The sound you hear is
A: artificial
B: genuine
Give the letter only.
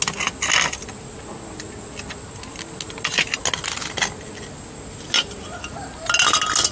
B